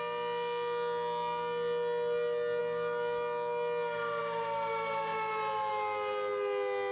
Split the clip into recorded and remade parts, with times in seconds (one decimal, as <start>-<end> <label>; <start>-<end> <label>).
0.0-6.9 recorded